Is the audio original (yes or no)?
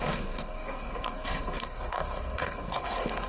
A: no